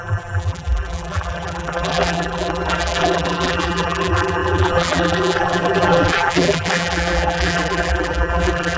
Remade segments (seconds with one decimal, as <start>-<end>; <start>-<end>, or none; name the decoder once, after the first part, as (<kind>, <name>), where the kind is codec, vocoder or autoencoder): 0.0-8.8 (vocoder, BigVGAN v2)